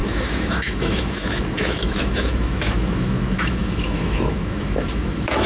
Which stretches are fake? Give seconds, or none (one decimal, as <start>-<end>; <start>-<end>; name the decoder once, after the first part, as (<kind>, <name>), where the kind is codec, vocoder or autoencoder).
0.0-5.5 (autoencoder, DAC-VAE)